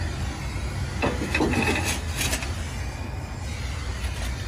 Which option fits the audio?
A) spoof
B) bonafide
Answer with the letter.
B